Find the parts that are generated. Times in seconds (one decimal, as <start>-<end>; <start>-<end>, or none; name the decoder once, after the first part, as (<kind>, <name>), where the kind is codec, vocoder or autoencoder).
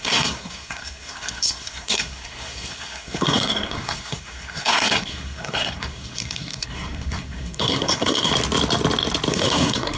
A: 0.0-8.3 (codec, SNAC); 9.3-10.0